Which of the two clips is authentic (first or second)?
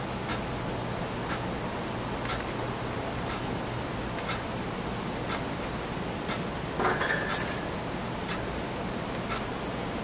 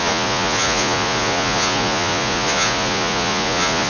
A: first